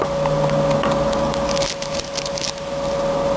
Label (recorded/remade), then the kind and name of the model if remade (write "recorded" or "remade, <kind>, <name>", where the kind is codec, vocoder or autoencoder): recorded